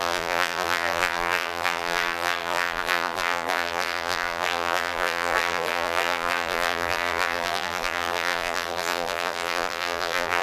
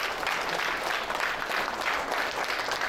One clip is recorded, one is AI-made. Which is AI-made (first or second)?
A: first